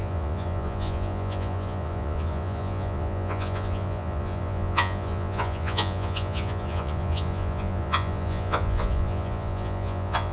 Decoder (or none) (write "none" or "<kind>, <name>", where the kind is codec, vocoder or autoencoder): vocoder, Vocos